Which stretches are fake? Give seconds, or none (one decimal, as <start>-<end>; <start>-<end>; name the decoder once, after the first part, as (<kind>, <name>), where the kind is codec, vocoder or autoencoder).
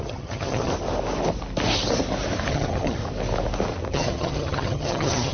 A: 0.0-0.7 (vocoder, HiFi-GAN); 2.5-3.0; 3.9-5.3